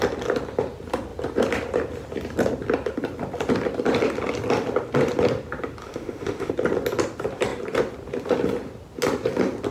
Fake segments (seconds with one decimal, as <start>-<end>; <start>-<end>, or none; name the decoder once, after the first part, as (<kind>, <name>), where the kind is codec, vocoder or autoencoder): 5.8-6.5 (autoencoder, DAC-VAE)

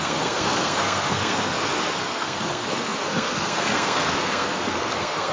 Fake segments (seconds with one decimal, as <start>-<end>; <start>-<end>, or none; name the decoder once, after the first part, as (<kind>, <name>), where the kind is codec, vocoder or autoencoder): 0.0-5.3 (codec, SNAC)

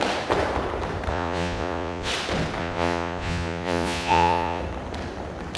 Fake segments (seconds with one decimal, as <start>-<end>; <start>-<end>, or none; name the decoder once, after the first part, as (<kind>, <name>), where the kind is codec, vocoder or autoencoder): 1.1-2.1 (vocoder, Vocos); 2.6-4.6

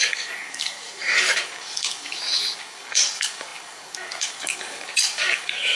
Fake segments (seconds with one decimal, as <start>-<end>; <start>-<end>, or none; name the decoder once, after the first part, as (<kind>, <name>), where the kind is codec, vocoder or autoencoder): 0.0-5.7 (codec, DAC)

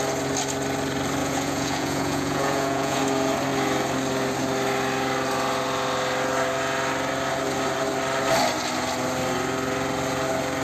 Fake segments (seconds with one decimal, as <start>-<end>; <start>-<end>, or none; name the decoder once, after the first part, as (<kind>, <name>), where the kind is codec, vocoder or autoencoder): 1.2-3.0 (vocoder, Vocos)